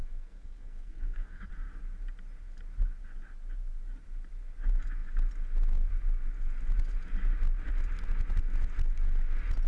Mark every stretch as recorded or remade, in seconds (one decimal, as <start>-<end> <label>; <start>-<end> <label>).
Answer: 0.0-1.5 remade; 1.5-9.7 recorded

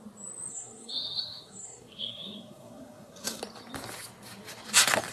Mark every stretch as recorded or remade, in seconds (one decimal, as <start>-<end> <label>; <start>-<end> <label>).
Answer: 0.0-0.5 recorded; 0.5-3.4 remade; 3.4-5.1 recorded

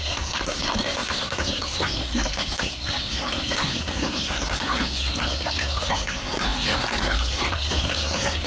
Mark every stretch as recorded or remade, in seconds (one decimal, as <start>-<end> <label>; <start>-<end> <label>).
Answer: 0.0-8.5 remade

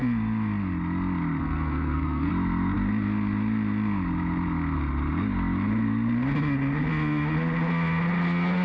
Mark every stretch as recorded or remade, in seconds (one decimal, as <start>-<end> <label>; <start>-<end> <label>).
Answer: 0.0-1.4 recorded; 1.4-2.3 remade; 2.3-8.6 recorded